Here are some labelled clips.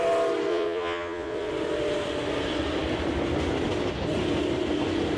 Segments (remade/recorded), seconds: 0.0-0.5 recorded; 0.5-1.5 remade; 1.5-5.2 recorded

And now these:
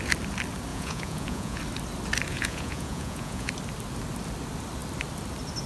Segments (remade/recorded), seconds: 0.0-0.7 recorded; 0.7-1.6 remade; 1.6-2.3 recorded; 2.3-3.5 remade; 3.5-5.7 recorded